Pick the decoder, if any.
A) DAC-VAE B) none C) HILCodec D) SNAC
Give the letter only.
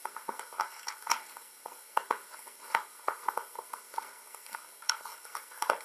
D